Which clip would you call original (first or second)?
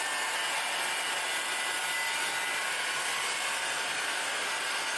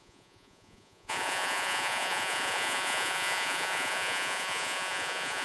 first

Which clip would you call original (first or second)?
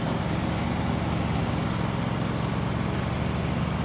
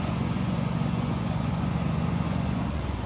first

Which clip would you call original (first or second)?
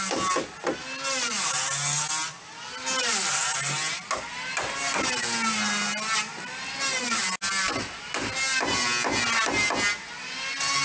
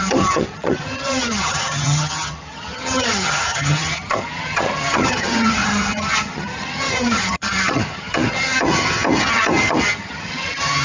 first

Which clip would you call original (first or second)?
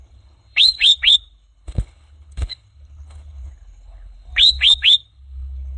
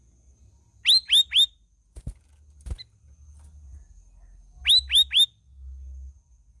second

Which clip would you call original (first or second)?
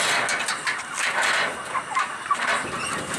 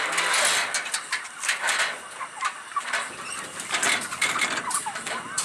first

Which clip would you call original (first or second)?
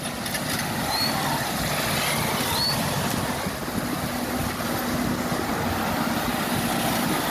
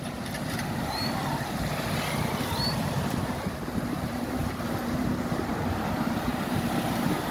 first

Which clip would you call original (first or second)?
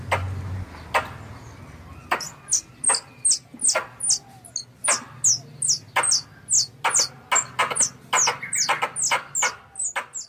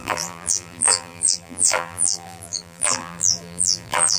first